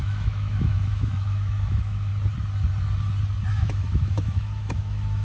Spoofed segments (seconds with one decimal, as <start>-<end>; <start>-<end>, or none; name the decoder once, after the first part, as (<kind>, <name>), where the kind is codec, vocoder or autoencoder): 0.0-2.1 (autoencoder, DAC-VAE); 3.5-5.2